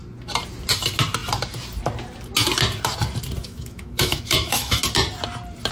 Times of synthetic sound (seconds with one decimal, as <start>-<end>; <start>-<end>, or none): 3.4-4.8